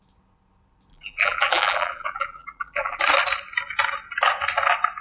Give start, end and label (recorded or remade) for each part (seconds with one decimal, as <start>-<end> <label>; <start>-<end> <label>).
0.0-0.9 recorded; 0.9-3.0 remade; 3.0-5.0 recorded